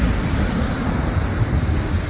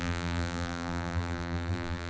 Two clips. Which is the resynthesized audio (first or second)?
second